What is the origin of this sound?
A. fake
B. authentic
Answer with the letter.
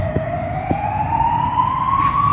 B